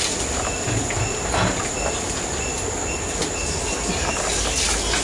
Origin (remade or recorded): recorded